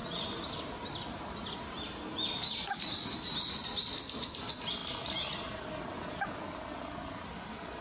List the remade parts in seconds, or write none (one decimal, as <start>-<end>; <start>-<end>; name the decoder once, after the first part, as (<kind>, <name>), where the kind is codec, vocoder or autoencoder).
none